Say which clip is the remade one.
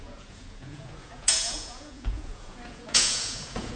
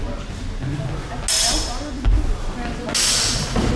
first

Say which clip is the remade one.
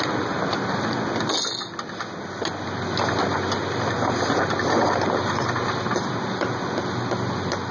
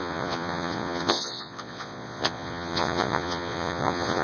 second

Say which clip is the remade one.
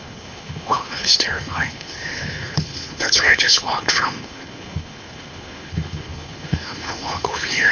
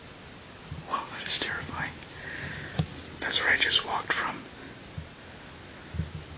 first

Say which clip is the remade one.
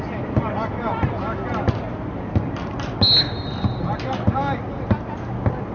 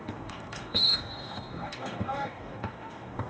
second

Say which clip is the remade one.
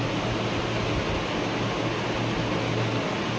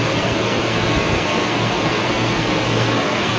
second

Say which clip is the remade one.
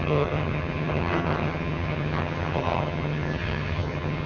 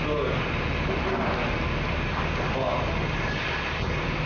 first